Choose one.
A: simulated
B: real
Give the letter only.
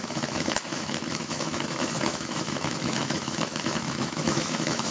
A